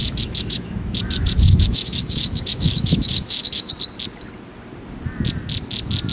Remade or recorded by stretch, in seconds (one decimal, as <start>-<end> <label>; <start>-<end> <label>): 0.0-3.7 remade; 3.7-6.1 recorded